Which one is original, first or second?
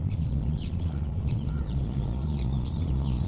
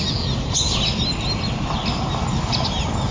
second